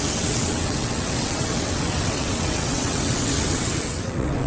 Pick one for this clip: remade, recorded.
remade